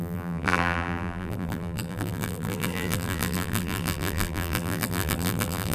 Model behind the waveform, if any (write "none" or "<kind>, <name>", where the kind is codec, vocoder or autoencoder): vocoder, BigVGAN v2